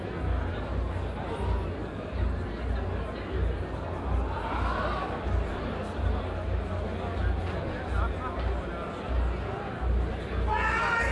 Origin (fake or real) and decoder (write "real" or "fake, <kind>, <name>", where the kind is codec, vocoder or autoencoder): real